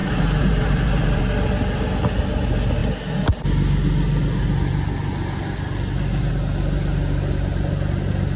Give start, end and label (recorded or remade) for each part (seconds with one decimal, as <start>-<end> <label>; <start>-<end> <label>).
0.0-1.2 remade; 1.2-8.4 recorded